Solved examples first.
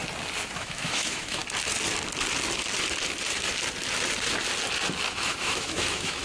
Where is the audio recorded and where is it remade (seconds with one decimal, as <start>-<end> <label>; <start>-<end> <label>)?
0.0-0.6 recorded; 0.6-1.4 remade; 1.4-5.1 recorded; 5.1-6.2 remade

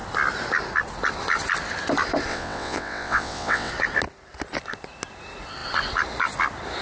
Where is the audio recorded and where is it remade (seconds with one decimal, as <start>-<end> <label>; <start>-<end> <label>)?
0.0-2.3 recorded; 2.3-3.7 remade; 3.7-6.8 recorded

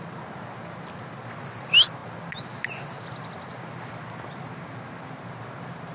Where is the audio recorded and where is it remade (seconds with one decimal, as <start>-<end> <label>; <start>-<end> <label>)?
0.0-5.9 recorded

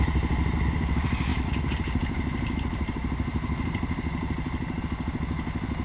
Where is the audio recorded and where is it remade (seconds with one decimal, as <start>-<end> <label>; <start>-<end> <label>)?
0.0-1.3 recorded; 1.3-4.8 remade; 4.8-5.8 recorded